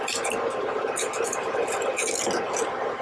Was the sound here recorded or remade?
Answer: recorded